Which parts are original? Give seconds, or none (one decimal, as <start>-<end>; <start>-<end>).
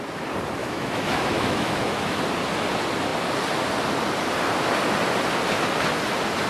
0.0-0.6; 2.2-6.5